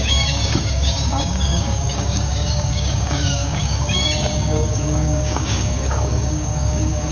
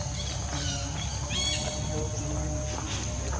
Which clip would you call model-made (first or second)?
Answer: first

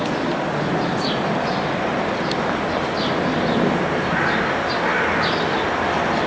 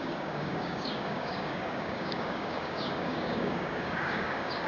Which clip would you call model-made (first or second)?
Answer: second